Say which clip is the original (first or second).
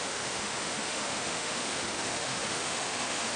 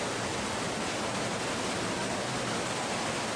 second